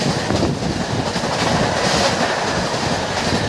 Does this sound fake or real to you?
real